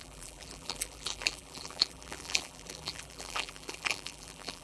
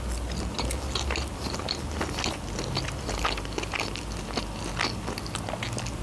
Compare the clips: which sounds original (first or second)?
second